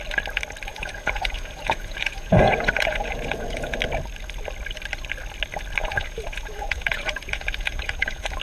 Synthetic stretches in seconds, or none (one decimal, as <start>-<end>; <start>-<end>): 0.7-3.8; 5.8-8.4